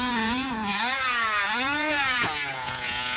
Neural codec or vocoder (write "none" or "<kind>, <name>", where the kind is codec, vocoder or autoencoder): vocoder, Vocos